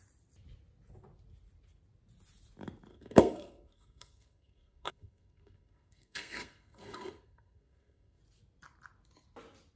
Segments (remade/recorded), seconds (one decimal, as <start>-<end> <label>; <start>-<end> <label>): 0.0-2.9 recorded; 2.9-8.2 remade; 8.2-9.8 recorded